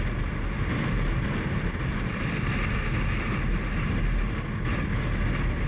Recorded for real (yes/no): yes